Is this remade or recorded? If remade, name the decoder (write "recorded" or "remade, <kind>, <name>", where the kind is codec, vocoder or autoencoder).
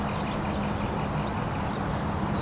recorded